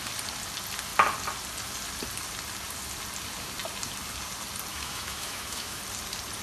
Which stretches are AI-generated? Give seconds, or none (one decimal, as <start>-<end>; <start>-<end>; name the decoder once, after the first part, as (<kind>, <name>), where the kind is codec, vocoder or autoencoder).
4.7-5.8 (autoencoder, DAC-VAE)